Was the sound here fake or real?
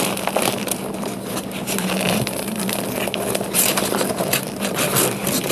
real